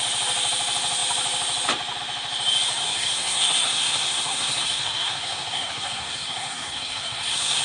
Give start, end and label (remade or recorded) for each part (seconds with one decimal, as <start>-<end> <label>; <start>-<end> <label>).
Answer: 0.0-2.8 recorded; 2.8-7.6 remade

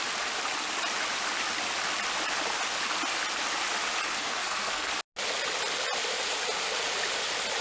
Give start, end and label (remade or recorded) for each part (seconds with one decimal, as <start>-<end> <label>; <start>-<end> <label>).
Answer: 0.0-4.1 recorded; 4.1-4.9 remade; 4.9-7.6 recorded

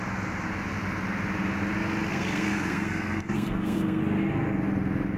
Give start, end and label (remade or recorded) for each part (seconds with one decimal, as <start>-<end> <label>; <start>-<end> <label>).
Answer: 0.0-2.1 recorded; 2.1-4.0 remade; 4.0-5.2 recorded

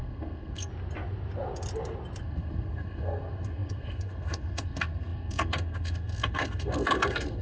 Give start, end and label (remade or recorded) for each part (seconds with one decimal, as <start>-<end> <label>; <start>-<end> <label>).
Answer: 0.0-0.7 remade; 0.7-2.2 recorded; 2.2-7.4 remade

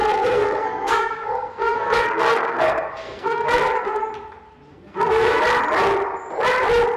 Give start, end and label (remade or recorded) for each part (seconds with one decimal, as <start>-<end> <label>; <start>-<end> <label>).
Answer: 0.0-4.1 remade; 4.1-4.7 recorded; 4.7-5.4 remade; 5.4-7.0 recorded

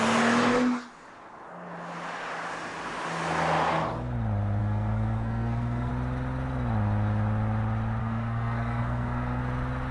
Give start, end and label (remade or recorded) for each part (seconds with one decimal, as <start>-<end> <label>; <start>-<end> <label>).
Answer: 0.0-4.6 recorded; 4.6-5.9 remade; 5.9-8.0 recorded; 8.0-9.4 remade; 9.4-9.9 recorded

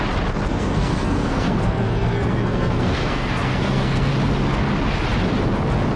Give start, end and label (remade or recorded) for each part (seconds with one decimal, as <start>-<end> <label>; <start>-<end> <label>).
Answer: 0.0-0.5 recorded; 0.5-4.1 remade; 4.1-6.0 recorded